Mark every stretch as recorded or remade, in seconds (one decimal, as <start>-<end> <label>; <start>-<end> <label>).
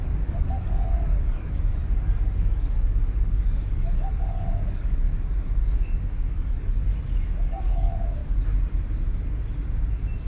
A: 0.0-5.1 remade; 5.1-5.6 recorded; 5.6-6.9 remade; 6.9-7.4 recorded; 7.4-8.2 remade; 8.2-10.3 recorded